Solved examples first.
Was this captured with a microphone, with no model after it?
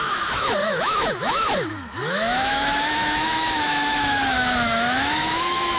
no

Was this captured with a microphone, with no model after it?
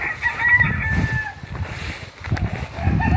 yes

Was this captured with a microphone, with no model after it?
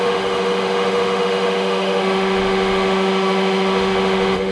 no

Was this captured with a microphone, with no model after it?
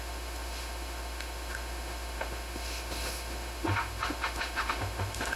no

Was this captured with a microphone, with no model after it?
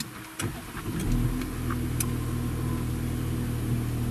yes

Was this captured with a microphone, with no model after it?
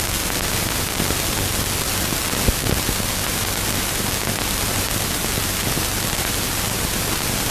yes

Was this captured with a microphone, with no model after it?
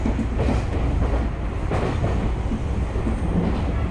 yes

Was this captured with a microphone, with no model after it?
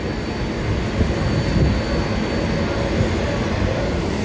yes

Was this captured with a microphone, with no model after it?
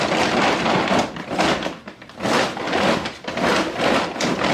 yes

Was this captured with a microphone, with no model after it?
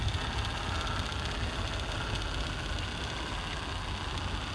yes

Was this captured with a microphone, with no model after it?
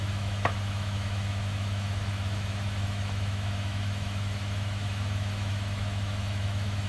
no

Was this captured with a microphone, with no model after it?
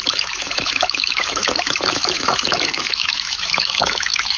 no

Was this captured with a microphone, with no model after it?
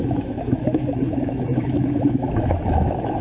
no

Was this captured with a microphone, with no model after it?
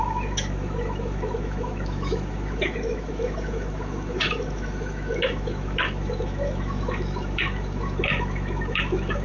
no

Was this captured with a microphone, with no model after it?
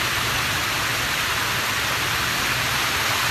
yes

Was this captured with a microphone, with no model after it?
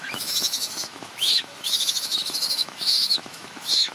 no